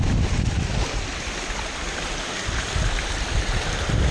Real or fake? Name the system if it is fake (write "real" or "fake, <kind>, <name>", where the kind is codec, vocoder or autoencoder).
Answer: real